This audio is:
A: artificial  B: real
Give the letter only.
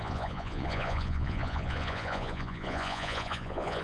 A